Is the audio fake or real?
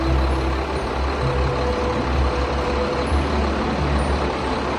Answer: real